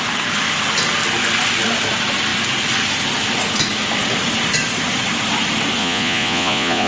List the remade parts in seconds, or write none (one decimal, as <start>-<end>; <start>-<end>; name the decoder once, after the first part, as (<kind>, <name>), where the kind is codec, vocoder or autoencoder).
5.8-6.9 (vocoder, Vocos)